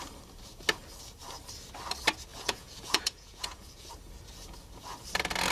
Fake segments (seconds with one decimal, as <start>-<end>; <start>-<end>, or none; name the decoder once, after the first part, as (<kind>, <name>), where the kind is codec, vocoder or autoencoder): 2.3-3.9 (vocoder, Vocos)